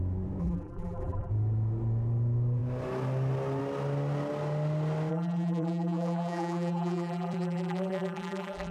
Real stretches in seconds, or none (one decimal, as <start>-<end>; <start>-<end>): 0.0-0.4; 1.3-5.1